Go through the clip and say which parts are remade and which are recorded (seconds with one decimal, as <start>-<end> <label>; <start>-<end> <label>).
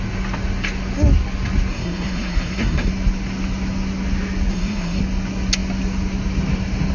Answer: 0.0-1.7 recorded; 1.7-2.9 remade; 2.9-4.5 recorded; 4.5-5.0 remade; 5.0-6.9 recorded